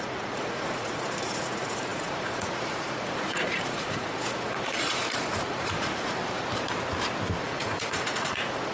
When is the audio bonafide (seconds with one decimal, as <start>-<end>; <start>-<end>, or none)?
6.2-7.4